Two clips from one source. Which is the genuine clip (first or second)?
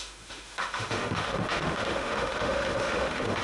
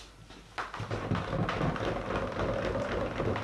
second